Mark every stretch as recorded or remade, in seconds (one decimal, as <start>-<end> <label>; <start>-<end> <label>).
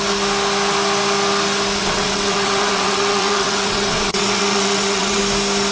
0.0-1.8 recorded; 1.8-5.2 remade; 5.2-5.7 recorded